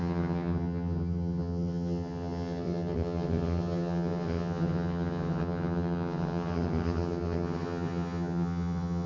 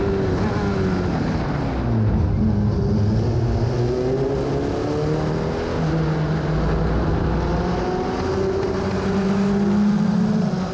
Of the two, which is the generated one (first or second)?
first